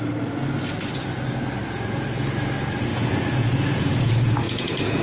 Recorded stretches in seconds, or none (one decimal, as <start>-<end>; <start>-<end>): 0.0-2.9